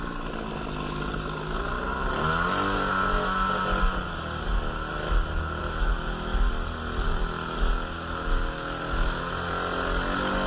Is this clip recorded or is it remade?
recorded